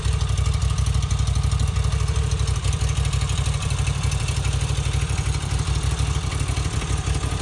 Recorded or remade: remade